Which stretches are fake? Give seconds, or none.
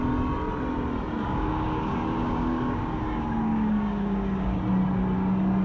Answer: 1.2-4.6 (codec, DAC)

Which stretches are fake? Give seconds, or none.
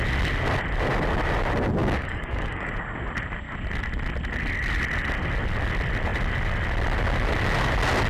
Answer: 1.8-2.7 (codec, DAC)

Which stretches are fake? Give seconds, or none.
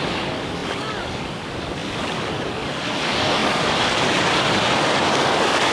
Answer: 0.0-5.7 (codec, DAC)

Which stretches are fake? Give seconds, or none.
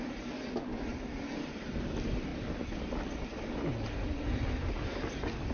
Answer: none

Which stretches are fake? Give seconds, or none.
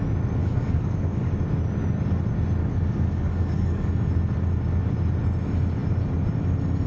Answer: 0.4-1.3 (codec, DAC); 2.6-3.9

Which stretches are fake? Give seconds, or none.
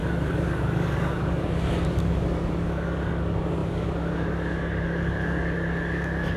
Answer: 0.0-6.4 (codec, DAC)